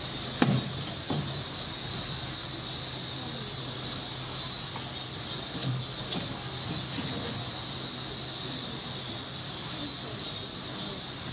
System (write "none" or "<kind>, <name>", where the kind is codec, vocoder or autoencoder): none